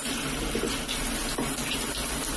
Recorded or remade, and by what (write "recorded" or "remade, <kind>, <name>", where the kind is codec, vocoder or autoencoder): recorded